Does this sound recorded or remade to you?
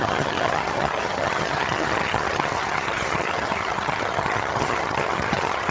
remade